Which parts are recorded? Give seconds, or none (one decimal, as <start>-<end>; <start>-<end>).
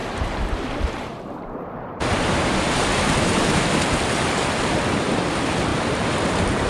3.7-5.7; 6.3-6.7